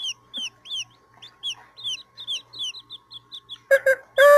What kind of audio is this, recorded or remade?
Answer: recorded